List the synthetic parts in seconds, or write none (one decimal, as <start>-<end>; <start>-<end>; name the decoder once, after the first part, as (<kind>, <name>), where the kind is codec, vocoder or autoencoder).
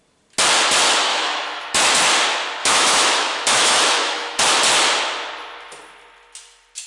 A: 1.1-1.9 (autoencoder, DAC-VAE); 2.6-4.4